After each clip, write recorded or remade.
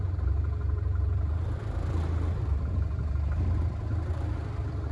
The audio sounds recorded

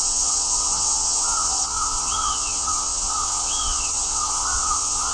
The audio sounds remade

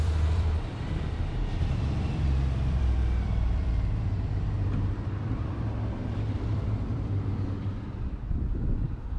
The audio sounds remade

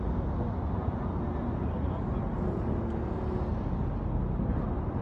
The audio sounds recorded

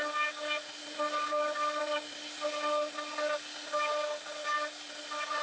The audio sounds recorded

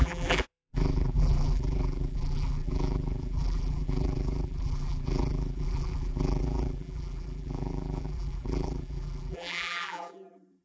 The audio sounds remade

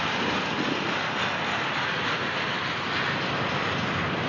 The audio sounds recorded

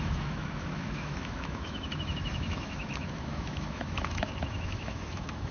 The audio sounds remade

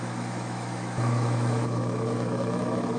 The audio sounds remade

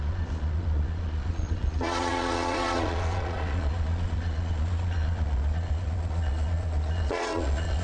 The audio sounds remade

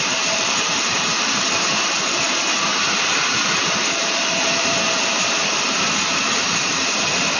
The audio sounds remade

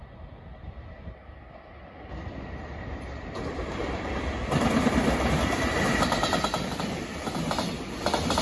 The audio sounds remade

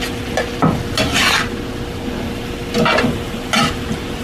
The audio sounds recorded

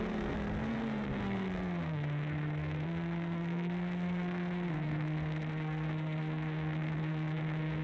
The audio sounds remade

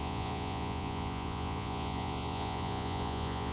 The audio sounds remade